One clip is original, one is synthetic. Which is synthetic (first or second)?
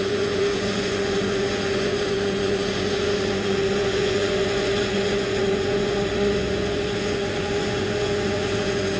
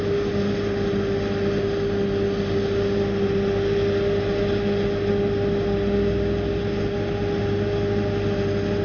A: first